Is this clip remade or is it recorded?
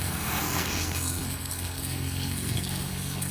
remade